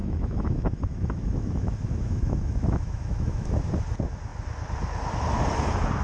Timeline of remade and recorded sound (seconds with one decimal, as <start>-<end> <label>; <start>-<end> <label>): 0.0-3.5 remade; 3.5-6.0 recorded